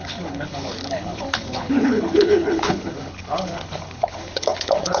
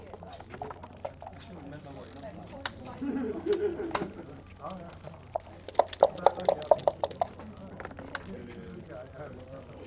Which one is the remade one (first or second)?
first